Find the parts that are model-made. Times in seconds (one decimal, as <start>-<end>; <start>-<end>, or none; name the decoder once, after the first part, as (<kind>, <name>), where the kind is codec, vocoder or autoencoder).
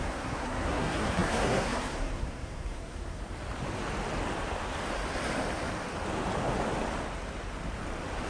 0.0-3.2 (codec, SNAC)